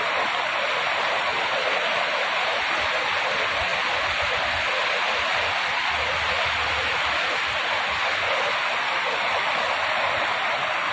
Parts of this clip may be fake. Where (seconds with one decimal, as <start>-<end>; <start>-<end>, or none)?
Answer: 1.7-3.0